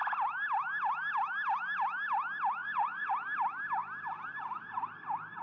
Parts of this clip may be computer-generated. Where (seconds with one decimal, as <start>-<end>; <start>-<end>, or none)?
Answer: 2.6-3.1